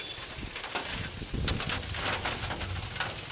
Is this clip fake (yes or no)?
no